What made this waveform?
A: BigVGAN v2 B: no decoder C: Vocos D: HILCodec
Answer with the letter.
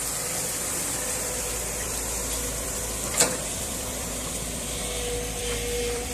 A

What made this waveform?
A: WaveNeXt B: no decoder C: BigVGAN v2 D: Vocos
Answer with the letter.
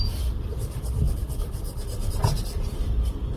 C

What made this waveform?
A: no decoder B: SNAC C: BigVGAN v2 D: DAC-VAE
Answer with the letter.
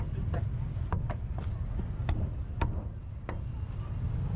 A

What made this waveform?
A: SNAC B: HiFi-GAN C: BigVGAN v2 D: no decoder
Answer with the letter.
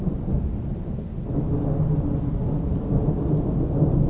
D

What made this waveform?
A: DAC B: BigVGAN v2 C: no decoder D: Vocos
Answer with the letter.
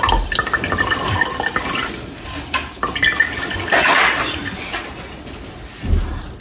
C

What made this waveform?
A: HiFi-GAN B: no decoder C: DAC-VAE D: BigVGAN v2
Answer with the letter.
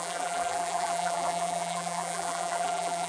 D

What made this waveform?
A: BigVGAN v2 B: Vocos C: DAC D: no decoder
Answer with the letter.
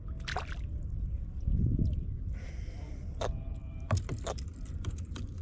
A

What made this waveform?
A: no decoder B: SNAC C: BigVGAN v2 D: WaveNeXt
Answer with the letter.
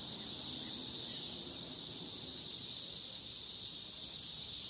C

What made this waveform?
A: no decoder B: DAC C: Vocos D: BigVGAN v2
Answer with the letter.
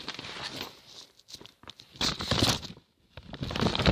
A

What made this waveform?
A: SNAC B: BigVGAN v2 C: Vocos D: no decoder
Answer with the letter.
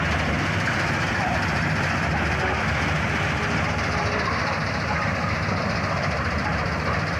B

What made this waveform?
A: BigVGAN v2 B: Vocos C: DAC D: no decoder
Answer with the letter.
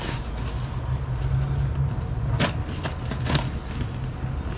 D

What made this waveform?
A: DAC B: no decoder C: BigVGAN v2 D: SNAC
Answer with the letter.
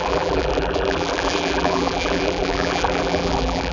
C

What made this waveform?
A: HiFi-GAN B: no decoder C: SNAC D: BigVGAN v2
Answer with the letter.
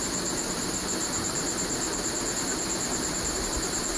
B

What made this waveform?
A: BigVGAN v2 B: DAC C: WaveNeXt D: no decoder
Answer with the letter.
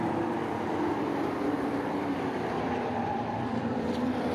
A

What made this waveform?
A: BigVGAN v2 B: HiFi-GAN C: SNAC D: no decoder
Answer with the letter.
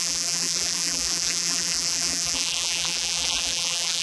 A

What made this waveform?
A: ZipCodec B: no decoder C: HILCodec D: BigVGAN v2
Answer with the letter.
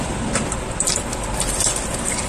D